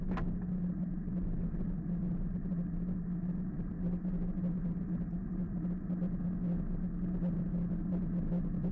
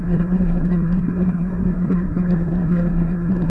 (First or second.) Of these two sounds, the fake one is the second